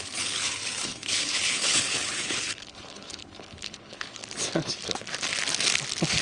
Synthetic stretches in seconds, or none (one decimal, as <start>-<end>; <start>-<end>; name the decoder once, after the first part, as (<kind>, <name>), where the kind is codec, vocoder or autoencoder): 0.0-4.2 (codec, HILCodec)

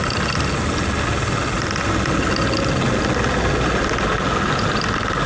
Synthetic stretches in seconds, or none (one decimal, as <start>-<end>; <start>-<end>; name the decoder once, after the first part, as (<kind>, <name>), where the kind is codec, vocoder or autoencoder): none

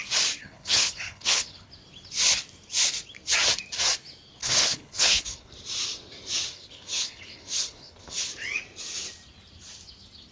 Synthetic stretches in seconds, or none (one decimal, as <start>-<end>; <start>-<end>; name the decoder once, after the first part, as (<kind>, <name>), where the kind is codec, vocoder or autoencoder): 0.4-1.7 (codec, HILCodec); 4.4-5.5; 6.5-8.3

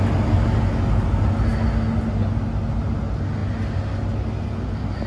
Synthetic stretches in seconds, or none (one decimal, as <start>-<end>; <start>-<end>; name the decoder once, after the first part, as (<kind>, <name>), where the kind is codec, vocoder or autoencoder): none

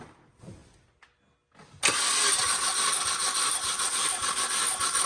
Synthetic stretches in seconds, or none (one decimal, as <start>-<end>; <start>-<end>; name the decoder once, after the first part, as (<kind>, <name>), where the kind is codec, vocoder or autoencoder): none

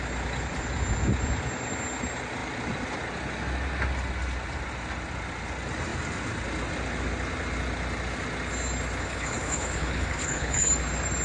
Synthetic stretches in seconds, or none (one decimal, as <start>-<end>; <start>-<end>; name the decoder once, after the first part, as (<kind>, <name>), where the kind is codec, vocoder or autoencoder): 9.0-10.7 (codec, HILCodec)